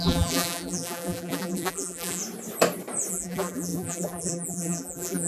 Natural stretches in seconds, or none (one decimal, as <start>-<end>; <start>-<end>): 2.2-3.1